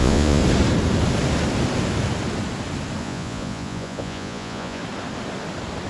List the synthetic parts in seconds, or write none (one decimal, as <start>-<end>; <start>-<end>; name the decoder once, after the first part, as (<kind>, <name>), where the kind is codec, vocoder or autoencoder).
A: 0.0-0.4 (vocoder, Vocos); 3.0-4.8

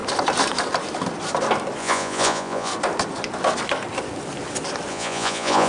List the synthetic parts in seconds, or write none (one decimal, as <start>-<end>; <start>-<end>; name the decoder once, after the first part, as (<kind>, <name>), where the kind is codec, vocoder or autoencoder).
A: 1.8-2.7 (vocoder, Vocos); 4.9-5.7

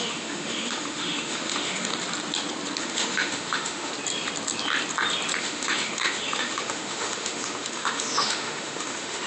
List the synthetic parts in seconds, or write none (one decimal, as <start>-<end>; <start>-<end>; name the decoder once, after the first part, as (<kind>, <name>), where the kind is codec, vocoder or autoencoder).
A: 0.0-1.9 (autoencoder, DAC-VAE); 2.8-3.9; 5.4-9.3

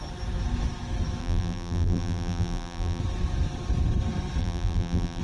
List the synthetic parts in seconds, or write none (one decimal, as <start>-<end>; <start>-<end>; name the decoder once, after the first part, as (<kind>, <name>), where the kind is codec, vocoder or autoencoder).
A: 1.2-3.0 (vocoder, BigVGAN v2); 4.4-5.2

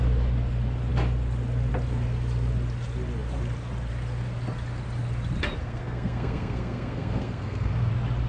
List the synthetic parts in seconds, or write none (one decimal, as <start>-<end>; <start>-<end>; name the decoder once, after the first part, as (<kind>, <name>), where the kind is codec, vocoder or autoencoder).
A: 5.6-7.9 (codec, SNAC)

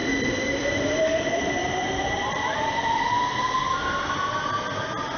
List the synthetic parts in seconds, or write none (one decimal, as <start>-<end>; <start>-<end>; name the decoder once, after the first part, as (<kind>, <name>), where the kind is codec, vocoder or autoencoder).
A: 0.0-3.1 (vocoder, BigVGAN v2)

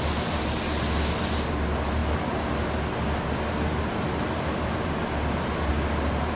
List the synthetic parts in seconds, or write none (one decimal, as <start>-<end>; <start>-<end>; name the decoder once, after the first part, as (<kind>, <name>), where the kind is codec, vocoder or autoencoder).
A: none

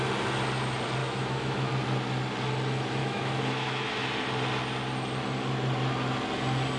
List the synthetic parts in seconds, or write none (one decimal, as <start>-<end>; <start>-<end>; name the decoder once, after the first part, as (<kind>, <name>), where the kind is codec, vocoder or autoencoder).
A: 1.0-1.7 (autoencoder, DAC-VAE); 3.0-3.9